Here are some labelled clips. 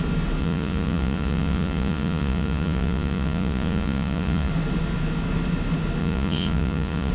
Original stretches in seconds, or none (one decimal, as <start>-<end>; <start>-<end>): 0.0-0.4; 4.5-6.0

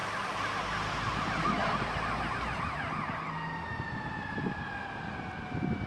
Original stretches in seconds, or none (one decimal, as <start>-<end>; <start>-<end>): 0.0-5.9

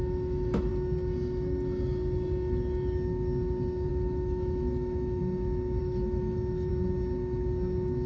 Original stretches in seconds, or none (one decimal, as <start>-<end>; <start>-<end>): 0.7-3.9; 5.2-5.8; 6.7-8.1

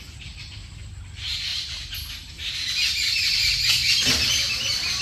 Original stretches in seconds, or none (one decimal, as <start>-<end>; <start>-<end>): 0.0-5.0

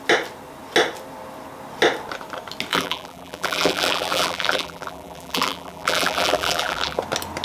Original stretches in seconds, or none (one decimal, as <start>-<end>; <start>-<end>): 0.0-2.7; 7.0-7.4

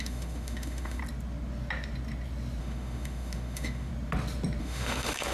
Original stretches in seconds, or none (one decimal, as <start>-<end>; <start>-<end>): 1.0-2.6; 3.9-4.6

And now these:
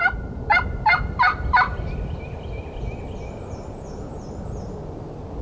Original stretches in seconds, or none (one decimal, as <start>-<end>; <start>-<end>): 0.0-0.9; 4.1-5.4

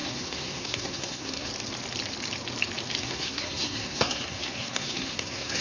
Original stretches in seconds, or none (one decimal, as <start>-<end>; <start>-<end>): 1.5-3.0